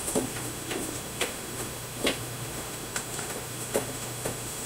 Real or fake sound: fake